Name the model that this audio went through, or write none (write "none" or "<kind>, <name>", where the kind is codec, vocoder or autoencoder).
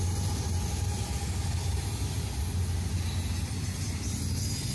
none